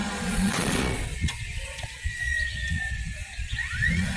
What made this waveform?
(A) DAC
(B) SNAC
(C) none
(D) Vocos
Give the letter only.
D